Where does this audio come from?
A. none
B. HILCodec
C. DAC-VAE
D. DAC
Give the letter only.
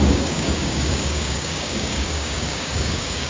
D